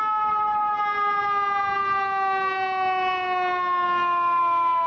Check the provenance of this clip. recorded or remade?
recorded